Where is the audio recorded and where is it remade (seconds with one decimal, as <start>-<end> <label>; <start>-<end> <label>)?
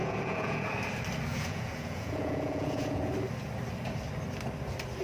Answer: 0.0-0.7 remade; 0.7-1.3 recorded; 1.3-3.1 remade; 3.1-5.0 recorded